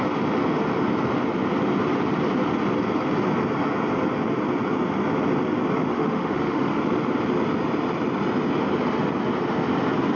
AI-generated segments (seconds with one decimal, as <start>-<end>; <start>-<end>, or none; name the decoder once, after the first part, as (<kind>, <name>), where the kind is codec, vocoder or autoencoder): 5.9-6.8 (autoencoder, DAC-VAE)